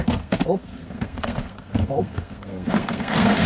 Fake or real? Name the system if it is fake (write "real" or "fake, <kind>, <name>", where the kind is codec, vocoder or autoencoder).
fake, codec, SNAC